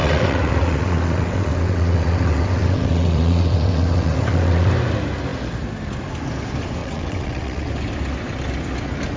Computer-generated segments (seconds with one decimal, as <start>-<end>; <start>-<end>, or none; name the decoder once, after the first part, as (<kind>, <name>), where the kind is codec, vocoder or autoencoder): 0.0-4.7 (vocoder, WaveNeXt); 6.8-7.7